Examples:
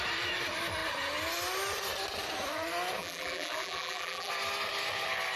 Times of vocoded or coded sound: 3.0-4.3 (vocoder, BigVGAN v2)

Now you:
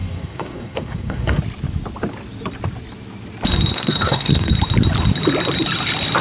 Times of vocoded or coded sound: 0.0-1.4 (codec, SNAC); 3.7-4.5

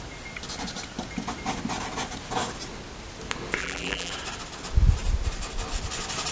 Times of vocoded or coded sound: 3.6-4.1 (vocoder, BigVGAN v2)

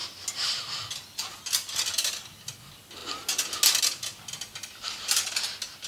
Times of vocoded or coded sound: none

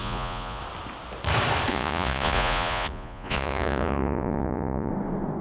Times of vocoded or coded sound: 0.0-0.6 (vocoder, Vocos); 1.7-4.9

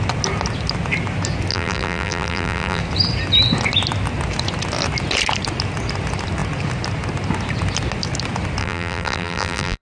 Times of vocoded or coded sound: 1.5-2.8 (vocoder, BigVGAN v2); 8.6-9.8

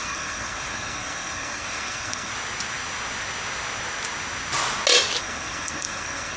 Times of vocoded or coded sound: 0.0-2.3 (codec, SNAC); 5.2-6.4